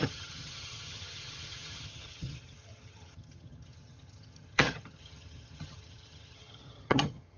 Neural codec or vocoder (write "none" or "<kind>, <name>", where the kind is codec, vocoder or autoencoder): vocoder, HiFi-GAN